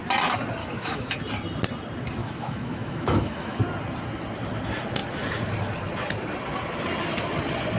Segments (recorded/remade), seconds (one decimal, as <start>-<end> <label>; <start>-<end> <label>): 0.0-0.6 recorded; 0.6-1.2 remade; 1.2-2.2 recorded; 2.2-3.6 remade; 3.6-7.8 recorded